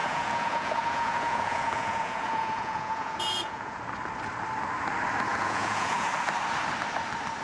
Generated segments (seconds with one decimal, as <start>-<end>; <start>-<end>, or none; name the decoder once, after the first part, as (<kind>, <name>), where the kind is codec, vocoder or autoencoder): 0.0-3.8 (vocoder, Vocos); 5.3-6.1